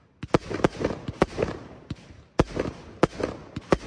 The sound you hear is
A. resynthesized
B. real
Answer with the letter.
B